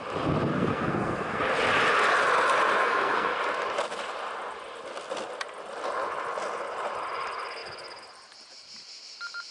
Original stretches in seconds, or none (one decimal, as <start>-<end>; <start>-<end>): 0.0-0.5; 1.4-2.8; 3.4-9.5